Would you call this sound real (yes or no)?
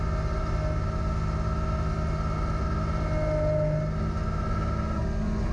yes